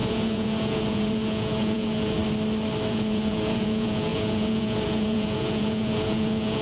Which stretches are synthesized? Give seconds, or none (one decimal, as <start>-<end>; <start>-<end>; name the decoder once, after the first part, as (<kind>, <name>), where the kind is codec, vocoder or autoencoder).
0.0-2.2 (vocoder, Vocos); 2.9-6.6